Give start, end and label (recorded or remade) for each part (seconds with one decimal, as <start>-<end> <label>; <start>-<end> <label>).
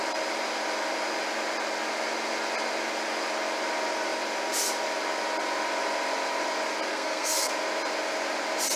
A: 0.0-6.9 recorded; 6.9-7.5 remade; 7.5-8.8 recorded